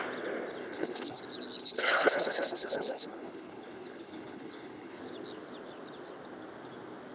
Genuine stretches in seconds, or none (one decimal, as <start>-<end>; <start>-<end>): 0.0-0.6; 1.2-1.6; 5.0-7.1